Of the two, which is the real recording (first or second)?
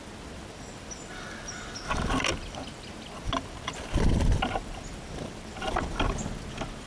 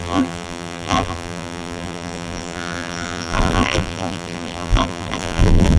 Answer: first